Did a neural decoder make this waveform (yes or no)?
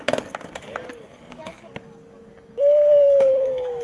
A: yes